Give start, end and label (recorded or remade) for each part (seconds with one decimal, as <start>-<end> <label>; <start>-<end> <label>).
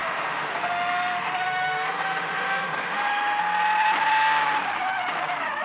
0.0-3.4 remade; 3.4-5.6 recorded